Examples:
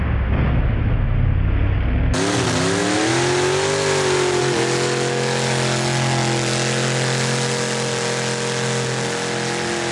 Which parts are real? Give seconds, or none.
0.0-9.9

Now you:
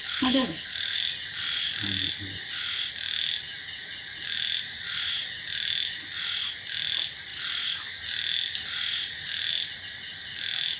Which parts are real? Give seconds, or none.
1.0-10.8

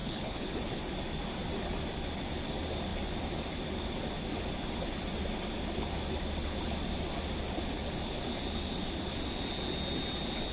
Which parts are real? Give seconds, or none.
0.5-10.5

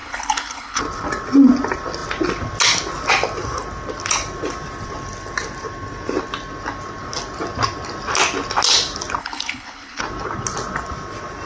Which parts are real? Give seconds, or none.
0.8-9.2; 10.0-11.5

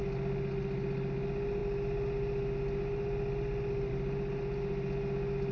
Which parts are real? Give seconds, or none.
0.0-5.5